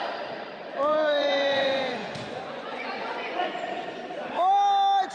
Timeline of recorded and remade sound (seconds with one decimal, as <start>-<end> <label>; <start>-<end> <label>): 0.0-0.9 recorded; 0.9-4.0 remade; 4.0-5.1 recorded